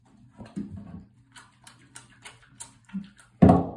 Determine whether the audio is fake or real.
fake